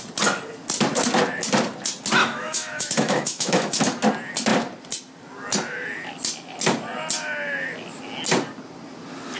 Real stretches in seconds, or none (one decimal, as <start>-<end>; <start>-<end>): 0.0-2.2; 3.8-9.4